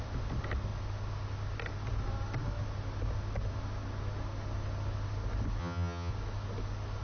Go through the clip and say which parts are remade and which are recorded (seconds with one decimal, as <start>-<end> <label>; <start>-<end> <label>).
0.0-5.6 recorded; 5.6-6.1 remade; 6.1-7.0 recorded